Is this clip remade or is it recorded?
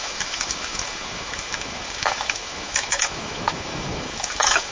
remade